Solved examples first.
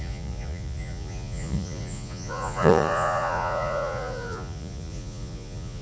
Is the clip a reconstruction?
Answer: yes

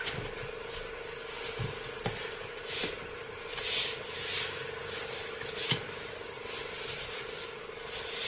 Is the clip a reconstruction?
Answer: no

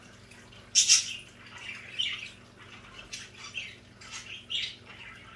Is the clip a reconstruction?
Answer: no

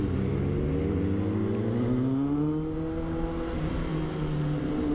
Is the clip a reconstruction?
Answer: no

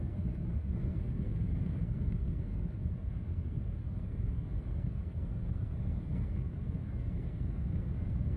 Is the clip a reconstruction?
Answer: yes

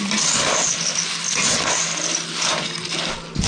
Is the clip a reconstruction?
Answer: no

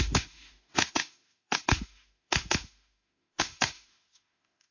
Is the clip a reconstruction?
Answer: yes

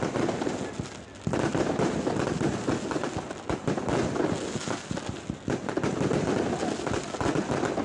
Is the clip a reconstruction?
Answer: no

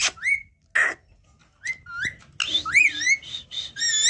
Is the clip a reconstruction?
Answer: no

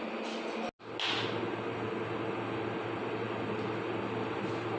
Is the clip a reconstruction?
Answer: no